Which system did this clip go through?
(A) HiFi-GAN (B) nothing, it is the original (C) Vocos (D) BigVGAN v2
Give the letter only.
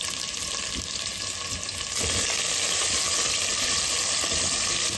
B